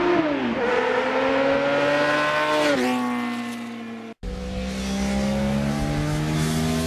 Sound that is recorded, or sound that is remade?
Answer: recorded